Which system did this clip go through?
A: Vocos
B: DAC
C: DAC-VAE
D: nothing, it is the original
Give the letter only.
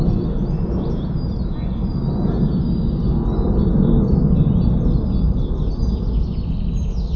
D